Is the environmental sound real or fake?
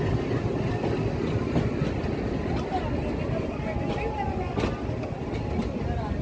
real